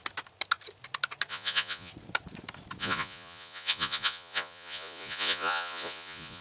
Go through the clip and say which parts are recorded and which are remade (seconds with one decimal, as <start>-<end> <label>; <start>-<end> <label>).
0.0-1.3 recorded; 1.3-1.9 remade; 1.9-2.8 recorded; 2.8-6.4 remade